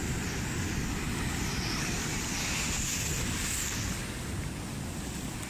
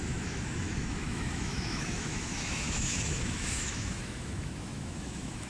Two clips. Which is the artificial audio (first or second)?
second